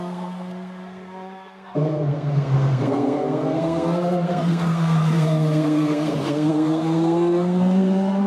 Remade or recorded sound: remade